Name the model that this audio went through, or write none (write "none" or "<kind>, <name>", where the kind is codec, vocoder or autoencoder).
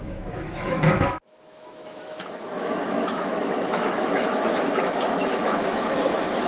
autoencoder, DAC-VAE